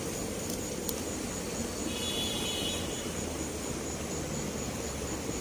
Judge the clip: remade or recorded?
recorded